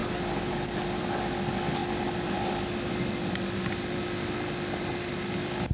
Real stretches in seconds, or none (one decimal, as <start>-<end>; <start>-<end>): 0.0-5.7